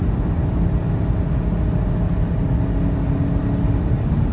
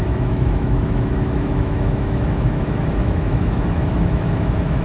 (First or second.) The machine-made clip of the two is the second